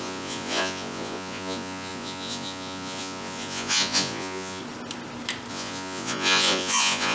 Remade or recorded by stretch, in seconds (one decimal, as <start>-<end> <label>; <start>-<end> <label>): 0.0-4.6 remade; 4.6-5.5 recorded; 5.5-7.1 remade